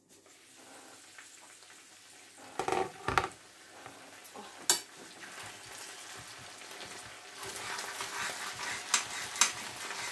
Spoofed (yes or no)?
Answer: no